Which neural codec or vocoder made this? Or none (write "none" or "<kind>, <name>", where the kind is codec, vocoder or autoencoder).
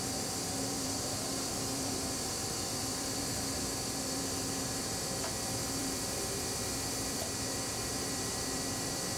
vocoder, BigVGAN v2